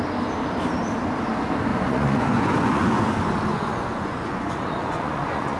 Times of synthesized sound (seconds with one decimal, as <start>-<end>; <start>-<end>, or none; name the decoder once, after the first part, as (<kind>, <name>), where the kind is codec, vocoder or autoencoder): 1.7-3.0 (vocoder, Vocos); 3.5-5.6